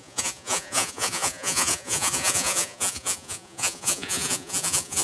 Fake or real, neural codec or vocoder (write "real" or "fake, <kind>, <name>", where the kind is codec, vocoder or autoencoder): fake, vocoder, Vocos